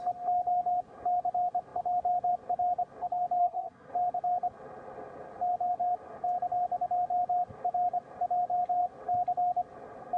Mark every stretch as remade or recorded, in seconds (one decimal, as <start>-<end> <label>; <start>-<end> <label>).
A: 0.0-3.4 recorded; 3.4-3.9 remade; 3.9-10.2 recorded